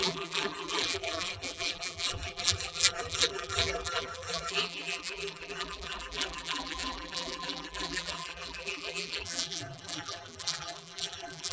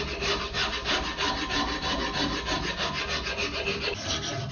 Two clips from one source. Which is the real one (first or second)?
second